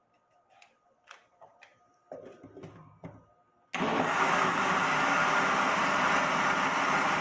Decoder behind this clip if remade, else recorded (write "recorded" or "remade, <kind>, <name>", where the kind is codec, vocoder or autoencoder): recorded